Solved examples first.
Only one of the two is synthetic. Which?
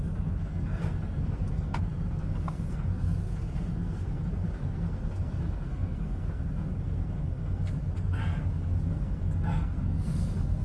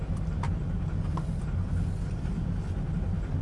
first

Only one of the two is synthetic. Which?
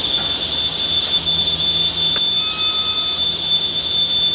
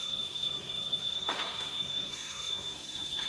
second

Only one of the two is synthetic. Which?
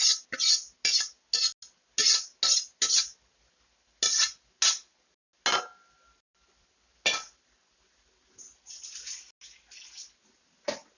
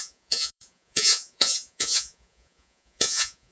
second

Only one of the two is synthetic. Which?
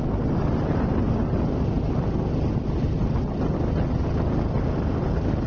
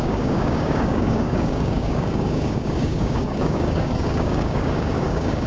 second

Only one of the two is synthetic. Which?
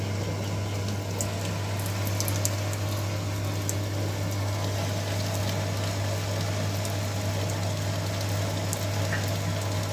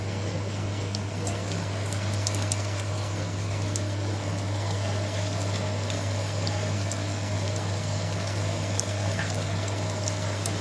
second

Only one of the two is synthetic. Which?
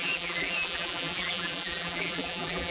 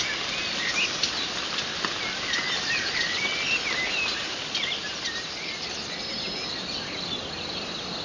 first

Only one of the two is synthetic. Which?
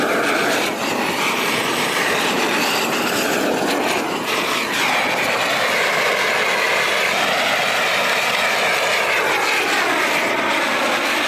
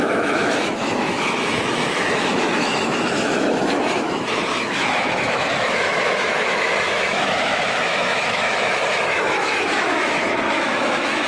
second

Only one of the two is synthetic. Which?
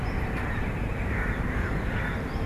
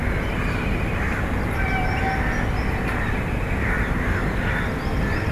first